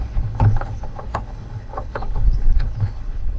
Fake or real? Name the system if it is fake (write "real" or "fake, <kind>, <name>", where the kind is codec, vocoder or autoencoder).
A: fake, codec, HILCodec